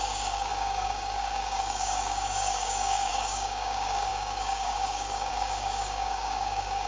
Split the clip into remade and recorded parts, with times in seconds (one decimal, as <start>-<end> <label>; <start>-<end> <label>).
0.0-6.9 remade